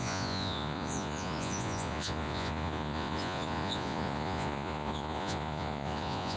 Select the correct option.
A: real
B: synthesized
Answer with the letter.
B